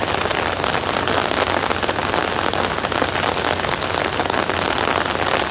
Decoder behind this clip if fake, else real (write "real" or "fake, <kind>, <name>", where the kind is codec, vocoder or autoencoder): real